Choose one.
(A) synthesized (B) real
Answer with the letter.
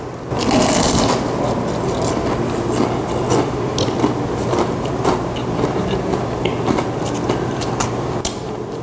B